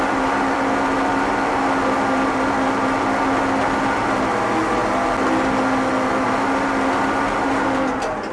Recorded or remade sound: recorded